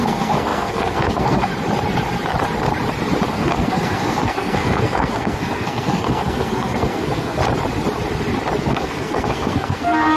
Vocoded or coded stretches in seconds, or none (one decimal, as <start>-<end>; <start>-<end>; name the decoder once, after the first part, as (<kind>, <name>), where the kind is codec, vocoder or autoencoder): 0.0-1.5 (codec, SNAC); 3.3-7.4; 8.6-10.2